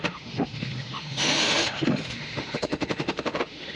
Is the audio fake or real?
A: fake